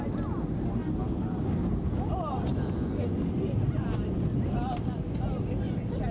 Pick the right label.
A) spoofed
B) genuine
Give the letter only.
B